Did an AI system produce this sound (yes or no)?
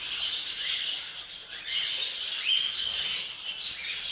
no